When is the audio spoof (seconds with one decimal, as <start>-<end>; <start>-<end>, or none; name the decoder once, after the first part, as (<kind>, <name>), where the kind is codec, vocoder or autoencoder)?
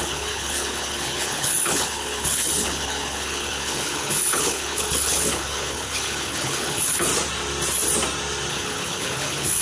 0.0-7.1 (codec, HILCodec); 8.5-9.6